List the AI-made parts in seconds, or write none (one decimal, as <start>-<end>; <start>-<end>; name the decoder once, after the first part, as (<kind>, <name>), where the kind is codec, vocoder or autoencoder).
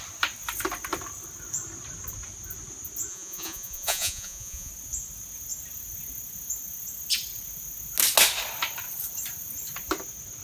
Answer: 3.1-4.7 (vocoder, Vocos)